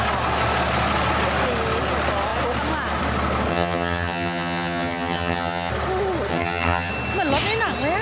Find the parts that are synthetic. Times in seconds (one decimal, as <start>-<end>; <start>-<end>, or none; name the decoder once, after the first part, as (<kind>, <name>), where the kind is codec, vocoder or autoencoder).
3.5-5.7 (vocoder, HiFi-GAN); 6.3-6.9